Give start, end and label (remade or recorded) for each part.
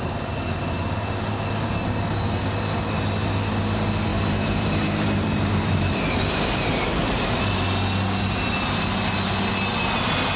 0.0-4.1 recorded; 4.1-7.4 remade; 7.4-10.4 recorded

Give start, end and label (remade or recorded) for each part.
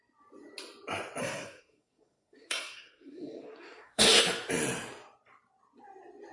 0.0-1.2 recorded; 1.2-4.2 remade; 4.2-6.3 recorded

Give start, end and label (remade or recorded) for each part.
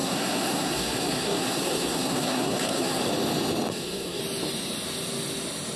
0.0-3.0 remade; 3.0-3.7 recorded; 3.7-4.2 remade; 4.2-5.8 recorded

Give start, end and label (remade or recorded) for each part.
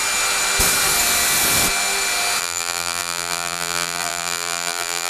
0.0-2.4 recorded; 2.4-5.1 remade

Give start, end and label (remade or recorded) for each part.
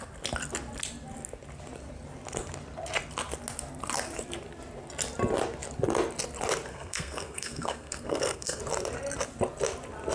0.0-6.7 recorded; 6.7-8.6 remade; 8.6-10.1 recorded